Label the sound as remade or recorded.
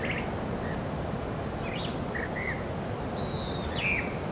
recorded